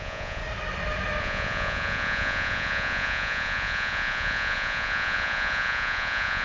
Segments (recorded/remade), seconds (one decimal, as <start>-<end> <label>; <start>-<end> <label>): 0.0-0.4 remade; 0.4-1.2 recorded; 1.2-6.4 remade